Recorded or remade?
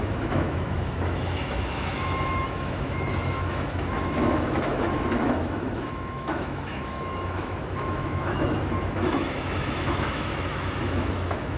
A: remade